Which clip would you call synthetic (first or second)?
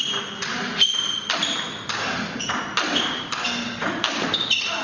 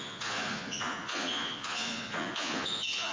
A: second